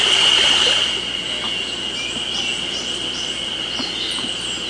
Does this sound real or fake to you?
real